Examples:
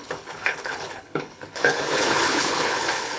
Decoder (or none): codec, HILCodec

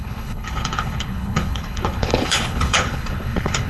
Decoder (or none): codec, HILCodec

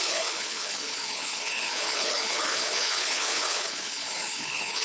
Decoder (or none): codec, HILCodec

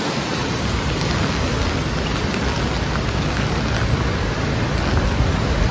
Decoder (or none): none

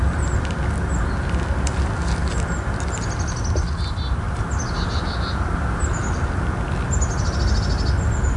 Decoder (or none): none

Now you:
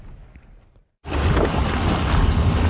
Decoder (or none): none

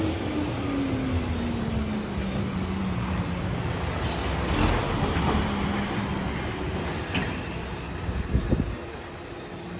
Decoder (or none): none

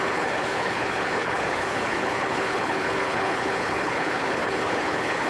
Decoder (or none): codec, HILCodec